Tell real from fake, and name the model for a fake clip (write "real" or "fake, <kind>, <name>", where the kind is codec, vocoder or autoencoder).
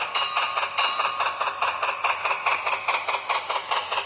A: fake, vocoder, BigVGAN v2